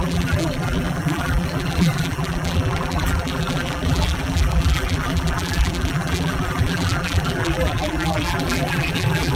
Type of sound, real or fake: fake